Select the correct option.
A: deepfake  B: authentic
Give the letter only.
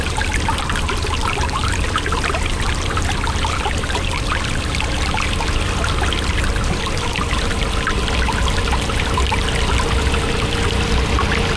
B